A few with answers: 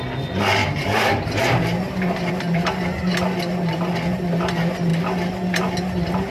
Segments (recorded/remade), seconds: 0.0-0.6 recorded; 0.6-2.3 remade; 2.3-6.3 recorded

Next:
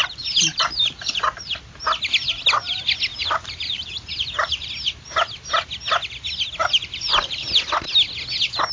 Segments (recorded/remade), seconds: 0.0-1.8 remade; 1.8-3.1 recorded; 3.1-4.7 remade; 4.7-6.6 recorded; 6.6-7.6 remade; 7.6-8.7 recorded

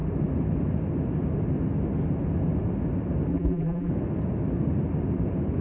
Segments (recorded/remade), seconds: 0.0-3.3 recorded; 3.3-3.9 remade; 3.9-5.6 recorded